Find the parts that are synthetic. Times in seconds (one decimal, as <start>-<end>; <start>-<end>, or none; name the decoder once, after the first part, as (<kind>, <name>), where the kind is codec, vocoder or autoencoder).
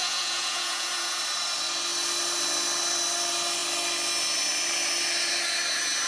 0.0-1.2 (vocoder, Vocos)